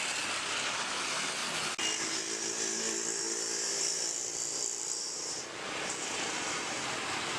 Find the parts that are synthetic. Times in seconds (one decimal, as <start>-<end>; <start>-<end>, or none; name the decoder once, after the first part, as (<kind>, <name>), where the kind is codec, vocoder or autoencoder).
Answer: 4.2-5.4 (vocoder, BigVGAN v2)